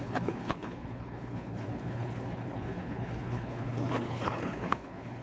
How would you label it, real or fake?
fake